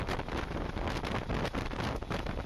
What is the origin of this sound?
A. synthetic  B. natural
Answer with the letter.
B